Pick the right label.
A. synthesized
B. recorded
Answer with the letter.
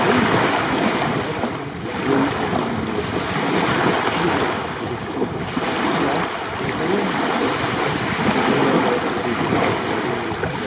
B